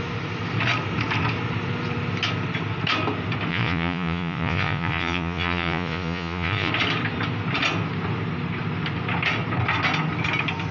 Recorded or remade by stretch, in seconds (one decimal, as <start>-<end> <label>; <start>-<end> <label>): 0.0-3.5 recorded; 3.5-6.7 remade; 6.7-10.7 recorded